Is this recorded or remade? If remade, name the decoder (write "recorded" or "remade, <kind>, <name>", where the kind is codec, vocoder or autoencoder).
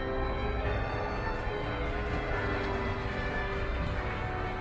recorded